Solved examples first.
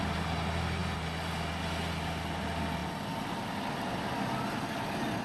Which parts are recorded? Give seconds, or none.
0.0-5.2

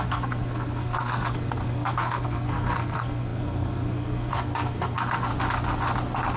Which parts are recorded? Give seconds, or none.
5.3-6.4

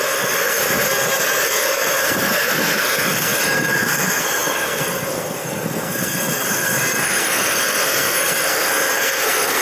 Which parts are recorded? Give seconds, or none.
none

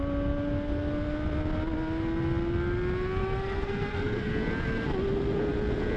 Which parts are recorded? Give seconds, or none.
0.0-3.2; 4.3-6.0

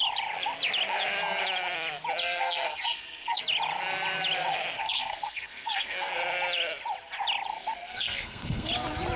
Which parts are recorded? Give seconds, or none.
0.0-2.2; 3.4-4.8; 6.1-7.5; 8.7-9.2

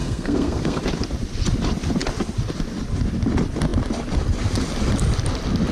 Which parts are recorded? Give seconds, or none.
0.8-5.7

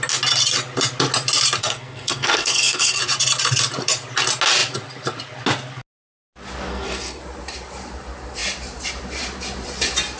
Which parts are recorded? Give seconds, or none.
0.0-1.6; 3.0-6.7; 7.2-10.2